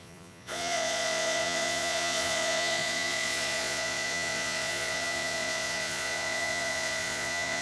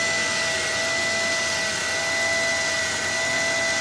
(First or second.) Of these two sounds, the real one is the second